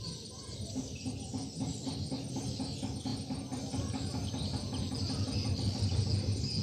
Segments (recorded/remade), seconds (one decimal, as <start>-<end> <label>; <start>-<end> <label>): 0.0-6.6 recorded